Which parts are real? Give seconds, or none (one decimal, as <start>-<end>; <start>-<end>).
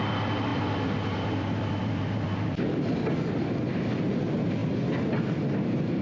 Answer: 0.0-6.0